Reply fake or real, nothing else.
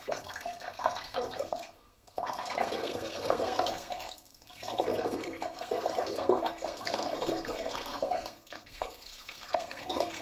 fake